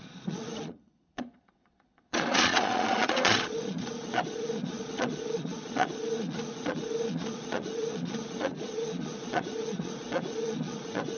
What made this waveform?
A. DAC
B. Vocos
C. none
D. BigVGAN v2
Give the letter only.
B